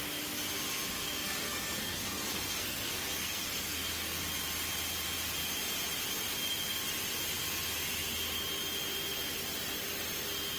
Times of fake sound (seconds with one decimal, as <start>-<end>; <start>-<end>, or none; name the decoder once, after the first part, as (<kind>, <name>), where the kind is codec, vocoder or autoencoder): 1.2-4.2 (codec, SNAC)